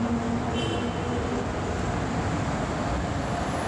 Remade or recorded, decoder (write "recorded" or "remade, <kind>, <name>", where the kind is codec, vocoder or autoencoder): recorded